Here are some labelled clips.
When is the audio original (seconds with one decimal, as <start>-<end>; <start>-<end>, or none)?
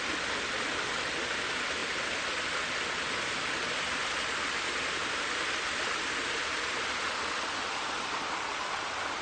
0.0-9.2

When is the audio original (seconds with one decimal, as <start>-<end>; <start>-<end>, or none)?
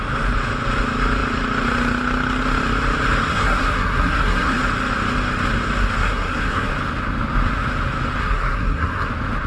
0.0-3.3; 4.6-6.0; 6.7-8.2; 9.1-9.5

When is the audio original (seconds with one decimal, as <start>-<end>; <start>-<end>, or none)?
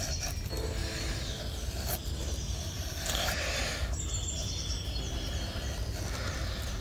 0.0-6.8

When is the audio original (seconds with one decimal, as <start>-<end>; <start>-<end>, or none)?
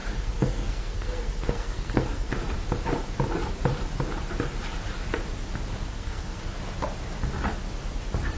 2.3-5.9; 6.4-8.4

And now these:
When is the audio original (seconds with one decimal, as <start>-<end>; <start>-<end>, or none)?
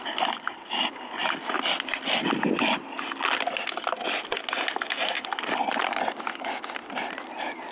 0.0-7.7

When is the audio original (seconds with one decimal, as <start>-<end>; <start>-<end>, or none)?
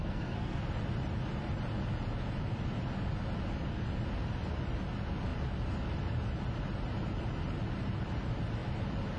0.6-9.2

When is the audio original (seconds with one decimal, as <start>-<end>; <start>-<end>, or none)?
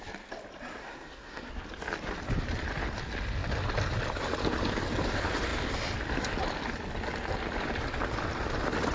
0.0-0.8; 1.5-8.9